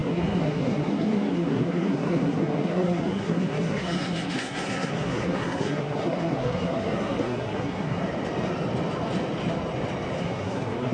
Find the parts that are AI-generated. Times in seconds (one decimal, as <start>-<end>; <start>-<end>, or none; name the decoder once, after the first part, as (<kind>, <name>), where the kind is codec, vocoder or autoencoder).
0.0-8.0 (codec, SNAC); 10.2-10.9

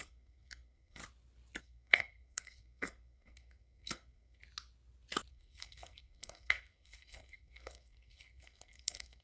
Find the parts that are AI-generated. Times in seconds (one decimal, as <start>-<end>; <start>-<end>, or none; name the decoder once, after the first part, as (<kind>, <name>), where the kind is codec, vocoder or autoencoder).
0.0-1.0 (codec, SNAC); 1.6-4.4; 5.3-9.2